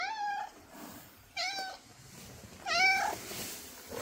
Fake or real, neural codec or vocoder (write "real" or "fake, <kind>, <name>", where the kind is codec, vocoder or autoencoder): real